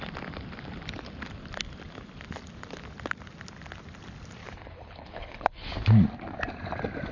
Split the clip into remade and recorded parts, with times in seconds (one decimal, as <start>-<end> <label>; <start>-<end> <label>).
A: 0.0-4.4 recorded; 4.4-5.7 remade; 5.7-7.1 recorded